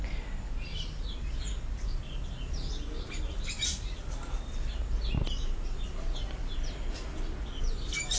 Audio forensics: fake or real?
real